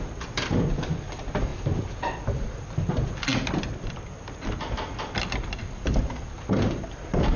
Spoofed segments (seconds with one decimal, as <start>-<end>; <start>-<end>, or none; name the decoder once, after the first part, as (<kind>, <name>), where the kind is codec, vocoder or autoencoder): none